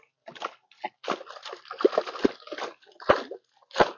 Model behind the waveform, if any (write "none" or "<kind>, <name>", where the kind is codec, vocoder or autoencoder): none